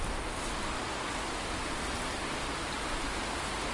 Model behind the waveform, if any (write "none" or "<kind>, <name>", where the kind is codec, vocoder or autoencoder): none